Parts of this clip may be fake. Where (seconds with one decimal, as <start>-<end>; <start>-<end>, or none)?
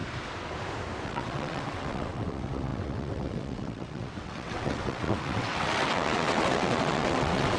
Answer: 1.0-7.6